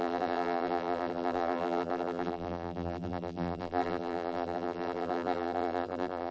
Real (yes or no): no